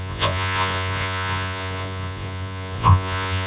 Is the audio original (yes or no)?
no